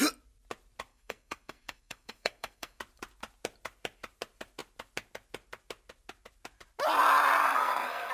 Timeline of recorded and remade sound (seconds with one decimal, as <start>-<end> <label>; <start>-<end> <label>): 0.0-0.9 recorded; 0.9-2.8 remade; 2.8-7.4 recorded; 7.4-8.1 remade